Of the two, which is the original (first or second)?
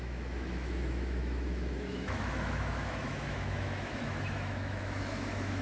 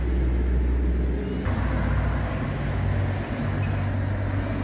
second